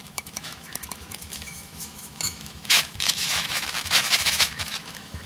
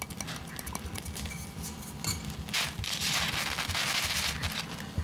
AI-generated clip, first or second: first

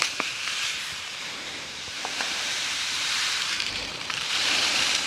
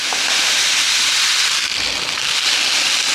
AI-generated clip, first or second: first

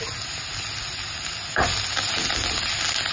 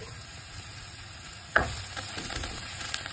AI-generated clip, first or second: second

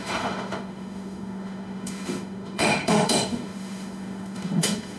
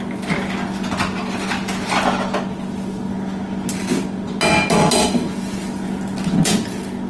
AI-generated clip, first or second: first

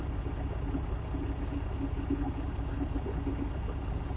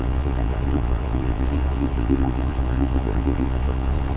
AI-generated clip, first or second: second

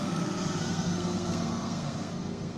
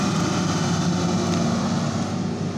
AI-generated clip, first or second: first